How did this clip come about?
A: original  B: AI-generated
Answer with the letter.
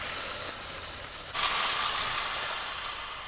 A